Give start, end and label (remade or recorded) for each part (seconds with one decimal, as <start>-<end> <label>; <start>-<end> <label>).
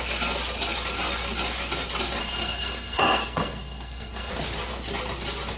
0.0-2.2 recorded; 2.2-4.3 remade; 4.3-5.6 recorded